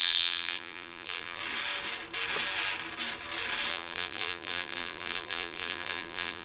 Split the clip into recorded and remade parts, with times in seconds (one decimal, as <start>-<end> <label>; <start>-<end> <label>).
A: 0.0-1.4 remade; 1.4-3.7 recorded; 3.7-6.4 remade

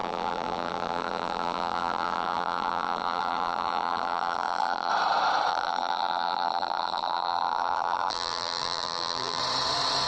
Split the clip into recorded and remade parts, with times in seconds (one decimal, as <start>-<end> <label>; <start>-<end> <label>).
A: 0.0-4.9 remade; 4.9-5.5 recorded; 5.5-9.4 remade; 9.4-10.1 recorded

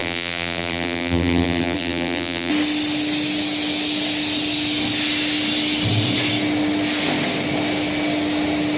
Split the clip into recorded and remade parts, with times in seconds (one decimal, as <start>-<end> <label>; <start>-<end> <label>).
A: 0.0-2.5 remade; 2.5-8.8 recorded

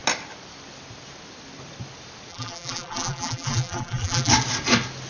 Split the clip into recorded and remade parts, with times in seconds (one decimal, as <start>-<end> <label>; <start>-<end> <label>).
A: 0.0-2.3 recorded; 2.3-4.3 remade; 4.3-5.1 recorded

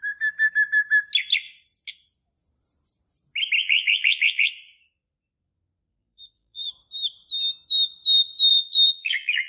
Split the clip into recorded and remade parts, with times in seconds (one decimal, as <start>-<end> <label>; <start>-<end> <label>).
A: 0.0-3.6 recorded; 3.6-4.5 remade; 4.5-5.9 recorded; 5.9-6.7 remade; 6.7-8.5 recorded; 8.5-9.5 remade

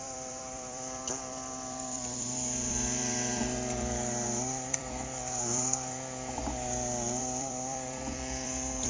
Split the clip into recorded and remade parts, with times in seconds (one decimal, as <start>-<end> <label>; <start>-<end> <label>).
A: 0.0-6.4 remade; 6.4-7.2 recorded; 7.2-8.9 remade

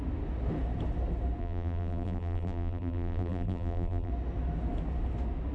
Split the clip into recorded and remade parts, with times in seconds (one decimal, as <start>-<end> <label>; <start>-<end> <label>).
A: 0.0-1.4 recorded; 1.4-4.1 remade; 4.1-5.5 recorded